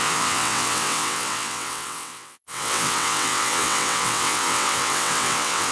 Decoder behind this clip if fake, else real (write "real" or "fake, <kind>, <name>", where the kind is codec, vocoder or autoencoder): fake, vocoder, WaveNeXt